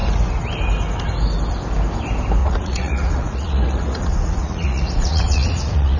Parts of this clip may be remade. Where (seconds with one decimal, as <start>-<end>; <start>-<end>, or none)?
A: 2.4-6.0